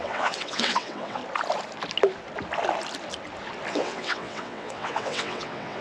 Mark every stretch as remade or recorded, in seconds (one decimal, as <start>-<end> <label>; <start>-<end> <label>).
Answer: 0.0-1.2 remade; 1.2-3.7 recorded; 3.7-5.8 remade